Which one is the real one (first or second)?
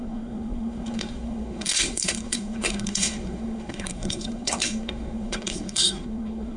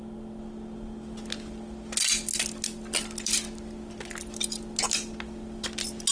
second